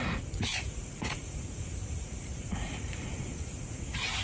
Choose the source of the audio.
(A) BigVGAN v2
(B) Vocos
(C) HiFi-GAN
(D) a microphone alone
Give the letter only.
B